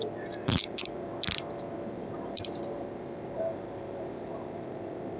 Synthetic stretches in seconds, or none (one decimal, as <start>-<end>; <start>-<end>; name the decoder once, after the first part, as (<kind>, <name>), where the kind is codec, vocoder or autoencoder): 0.0-1.1 (vocoder, BigVGAN v2); 1.9-5.2